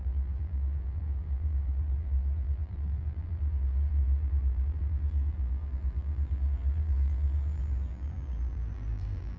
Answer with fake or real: fake